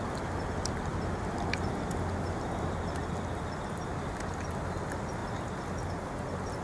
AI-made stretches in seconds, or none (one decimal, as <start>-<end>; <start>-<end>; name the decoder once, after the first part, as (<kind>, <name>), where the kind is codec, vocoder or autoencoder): none